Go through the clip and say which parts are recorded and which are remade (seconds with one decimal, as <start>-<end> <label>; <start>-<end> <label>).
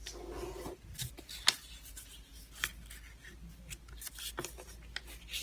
0.0-5.4 recorded